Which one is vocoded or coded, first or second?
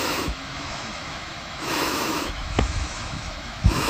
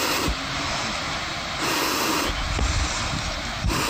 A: first